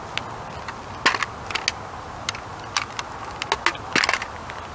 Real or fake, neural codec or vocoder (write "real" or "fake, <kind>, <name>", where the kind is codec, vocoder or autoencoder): real